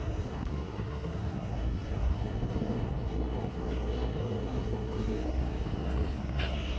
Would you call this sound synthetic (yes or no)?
yes